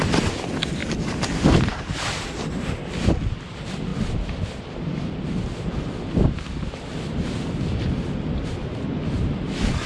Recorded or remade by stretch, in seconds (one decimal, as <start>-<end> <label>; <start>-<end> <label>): 0.0-0.8 recorded; 0.8-3.0 remade; 3.0-3.9 recorded; 3.9-5.1 remade; 5.1-9.9 recorded